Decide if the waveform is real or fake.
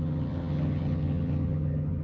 fake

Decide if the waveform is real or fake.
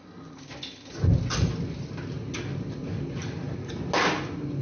real